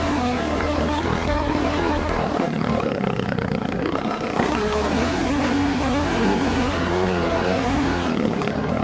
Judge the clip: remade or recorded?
remade